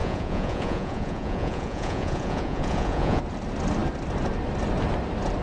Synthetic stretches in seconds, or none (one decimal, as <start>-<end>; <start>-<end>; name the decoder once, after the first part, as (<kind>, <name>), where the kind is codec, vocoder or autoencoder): 0.0-3.2 (vocoder, Vocos)